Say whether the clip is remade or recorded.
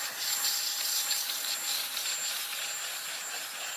recorded